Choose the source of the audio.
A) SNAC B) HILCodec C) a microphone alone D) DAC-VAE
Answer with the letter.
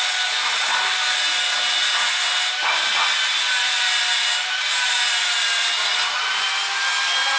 C